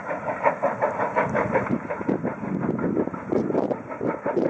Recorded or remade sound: recorded